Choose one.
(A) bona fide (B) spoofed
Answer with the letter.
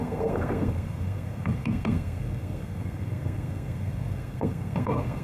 B